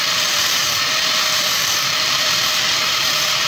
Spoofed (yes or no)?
yes